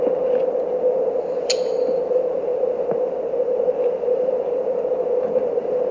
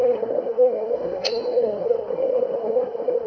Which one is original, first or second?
first